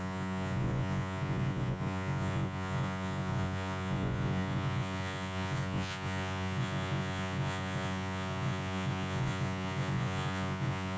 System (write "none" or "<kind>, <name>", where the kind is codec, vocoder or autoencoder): vocoder, Vocos